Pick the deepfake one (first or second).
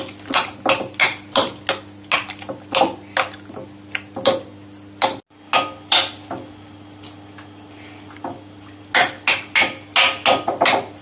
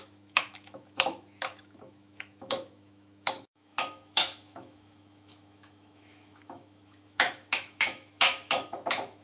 second